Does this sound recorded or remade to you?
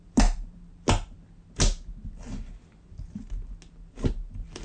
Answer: recorded